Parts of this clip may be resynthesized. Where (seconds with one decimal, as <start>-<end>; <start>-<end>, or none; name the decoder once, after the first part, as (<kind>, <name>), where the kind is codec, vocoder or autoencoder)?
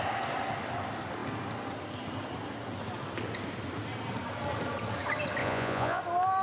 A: 5.4-6.0 (vocoder, Vocos)